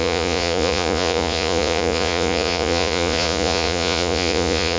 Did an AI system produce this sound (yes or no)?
yes